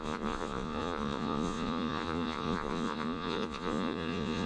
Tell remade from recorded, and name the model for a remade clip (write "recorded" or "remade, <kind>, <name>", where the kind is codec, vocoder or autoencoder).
remade, vocoder, Vocos